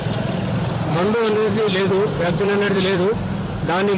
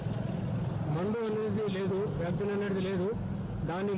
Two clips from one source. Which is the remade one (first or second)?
first